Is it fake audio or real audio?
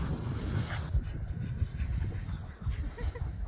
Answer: real